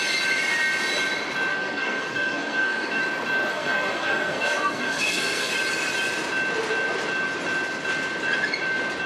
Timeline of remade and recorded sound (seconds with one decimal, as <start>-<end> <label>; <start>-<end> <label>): 0.0-1.5 recorded; 1.5-3.0 remade; 3.0-3.5 recorded; 3.5-5.5 remade; 5.5-9.1 recorded